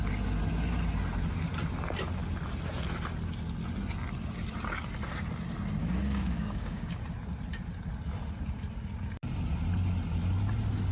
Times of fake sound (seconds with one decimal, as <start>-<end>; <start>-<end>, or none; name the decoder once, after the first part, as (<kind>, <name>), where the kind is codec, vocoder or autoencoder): 5.8-7.0 (codec, DAC)